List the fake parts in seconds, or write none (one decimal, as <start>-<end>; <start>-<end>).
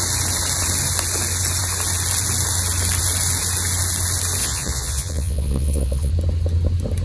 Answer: 4.4-6.1